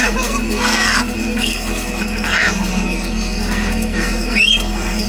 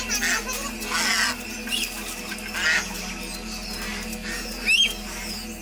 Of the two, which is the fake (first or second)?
first